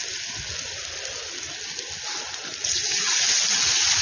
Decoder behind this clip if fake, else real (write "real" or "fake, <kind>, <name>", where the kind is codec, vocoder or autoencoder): real